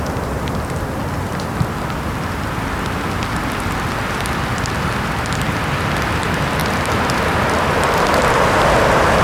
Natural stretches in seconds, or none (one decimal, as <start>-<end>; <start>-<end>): 0.0-9.2